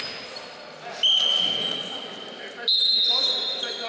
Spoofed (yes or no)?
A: no